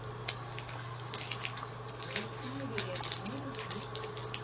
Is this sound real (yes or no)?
yes